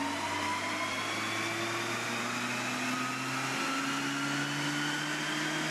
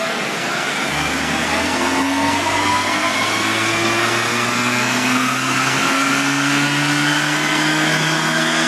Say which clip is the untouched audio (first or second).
first